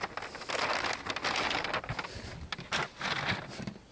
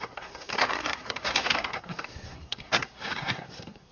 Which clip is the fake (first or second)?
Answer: second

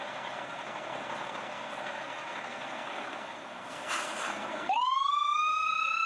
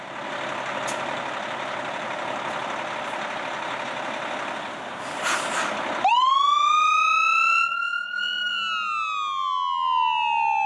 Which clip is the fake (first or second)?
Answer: first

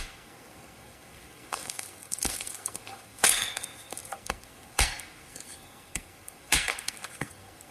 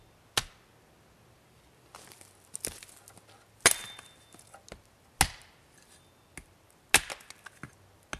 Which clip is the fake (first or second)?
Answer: first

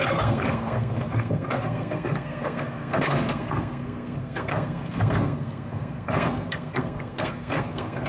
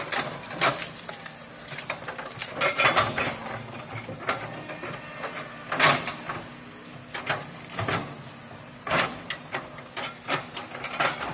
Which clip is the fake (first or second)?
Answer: first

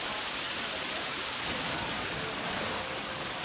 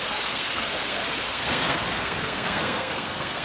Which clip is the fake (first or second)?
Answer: second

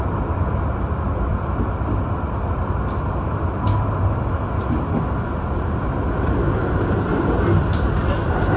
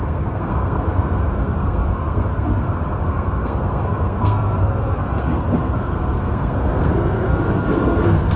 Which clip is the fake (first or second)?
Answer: second